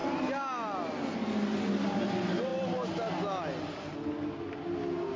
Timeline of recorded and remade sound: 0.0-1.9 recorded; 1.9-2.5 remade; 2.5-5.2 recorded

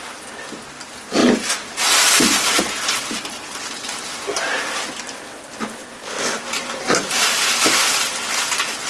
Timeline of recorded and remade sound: 0.0-5.8 recorded; 5.8-8.9 remade

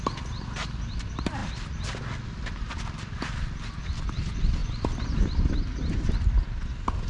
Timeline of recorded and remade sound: 0.0-7.1 recorded